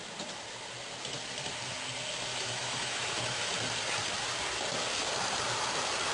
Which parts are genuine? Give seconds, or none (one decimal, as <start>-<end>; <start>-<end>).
0.0-2.3; 3.4-6.1